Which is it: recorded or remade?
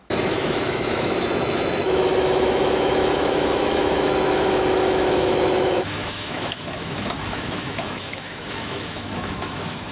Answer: remade